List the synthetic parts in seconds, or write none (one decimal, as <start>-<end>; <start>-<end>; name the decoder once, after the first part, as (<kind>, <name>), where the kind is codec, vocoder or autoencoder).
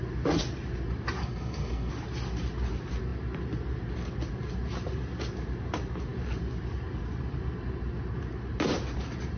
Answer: 1.2-1.9 (codec, SNAC)